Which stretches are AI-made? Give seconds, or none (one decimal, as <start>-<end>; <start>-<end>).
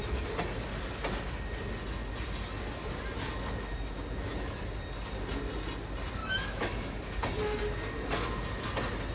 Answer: 6.2-7.0